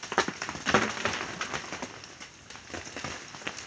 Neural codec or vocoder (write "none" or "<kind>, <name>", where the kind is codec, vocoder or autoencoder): none